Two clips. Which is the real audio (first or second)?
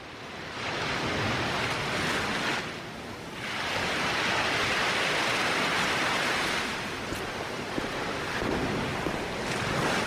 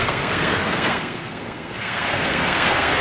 first